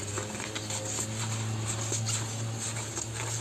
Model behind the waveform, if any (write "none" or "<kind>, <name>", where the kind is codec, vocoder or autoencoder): none